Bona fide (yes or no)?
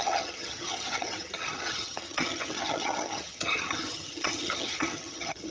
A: no